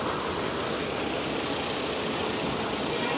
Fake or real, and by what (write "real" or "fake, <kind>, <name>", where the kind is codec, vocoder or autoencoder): real